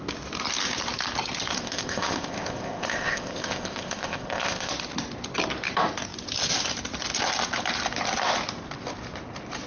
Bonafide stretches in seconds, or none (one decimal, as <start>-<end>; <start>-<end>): 0.0-1.5; 4.7-9.7